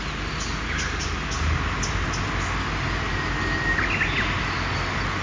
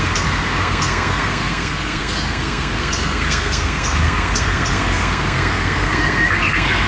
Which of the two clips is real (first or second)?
first